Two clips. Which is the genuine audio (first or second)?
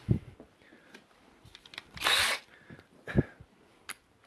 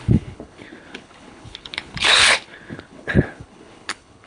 first